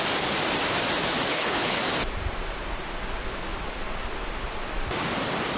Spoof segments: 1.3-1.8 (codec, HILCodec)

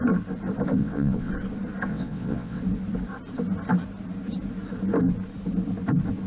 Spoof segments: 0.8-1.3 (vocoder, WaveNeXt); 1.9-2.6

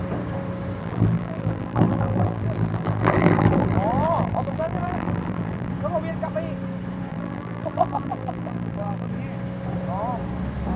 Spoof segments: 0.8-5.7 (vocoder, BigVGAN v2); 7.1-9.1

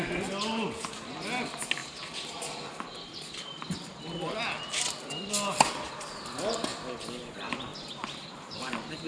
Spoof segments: 7.7-8.6 (vocoder, BigVGAN v2)

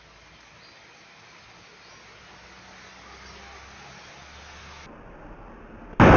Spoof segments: none

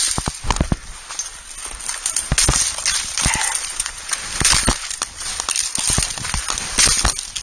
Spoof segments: 3.7-4.2 (vocoder, Vocos)